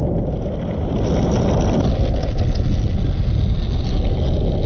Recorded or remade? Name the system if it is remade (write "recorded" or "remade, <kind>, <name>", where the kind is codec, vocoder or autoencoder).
recorded